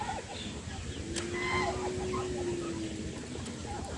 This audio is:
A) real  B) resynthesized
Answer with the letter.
A